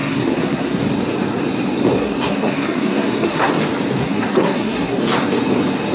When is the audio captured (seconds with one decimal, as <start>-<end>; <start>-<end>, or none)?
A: 0.8-2.0; 3.5-4.0; 5.0-5.9